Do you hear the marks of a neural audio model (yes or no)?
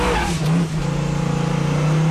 no